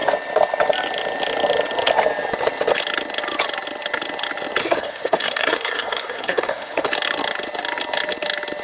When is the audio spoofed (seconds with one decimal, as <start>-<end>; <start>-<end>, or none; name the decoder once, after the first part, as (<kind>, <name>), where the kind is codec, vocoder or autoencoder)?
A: 4.6-6.9 (codec, SNAC)